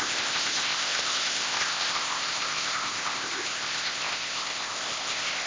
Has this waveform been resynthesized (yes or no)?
yes